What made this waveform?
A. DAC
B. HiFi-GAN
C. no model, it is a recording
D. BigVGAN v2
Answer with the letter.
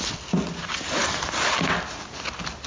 C